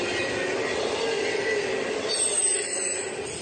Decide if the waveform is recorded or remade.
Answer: recorded